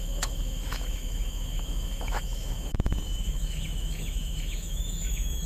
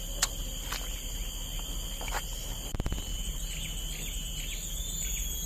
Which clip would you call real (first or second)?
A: second